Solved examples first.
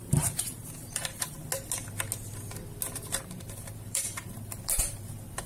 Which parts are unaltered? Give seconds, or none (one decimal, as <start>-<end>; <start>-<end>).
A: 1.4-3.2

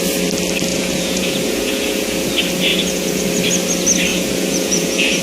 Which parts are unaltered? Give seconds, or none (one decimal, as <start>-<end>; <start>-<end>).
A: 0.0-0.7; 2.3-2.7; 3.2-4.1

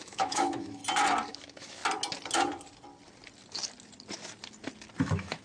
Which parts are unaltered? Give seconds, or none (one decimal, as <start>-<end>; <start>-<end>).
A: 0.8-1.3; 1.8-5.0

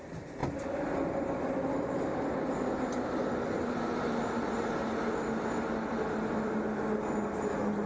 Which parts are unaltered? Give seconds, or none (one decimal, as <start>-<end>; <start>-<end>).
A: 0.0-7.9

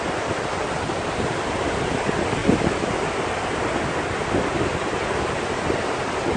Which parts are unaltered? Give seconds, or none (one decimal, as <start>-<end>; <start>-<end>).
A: 2.4-6.4

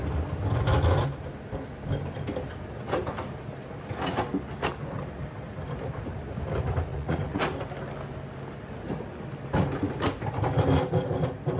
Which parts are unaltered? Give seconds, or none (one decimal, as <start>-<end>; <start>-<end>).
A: 0.0-6.9; 7.4-11.6

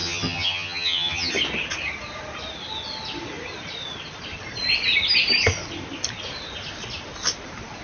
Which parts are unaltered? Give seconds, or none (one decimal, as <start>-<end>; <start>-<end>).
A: 1.3-7.8